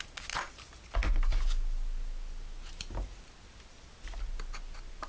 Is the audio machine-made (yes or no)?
no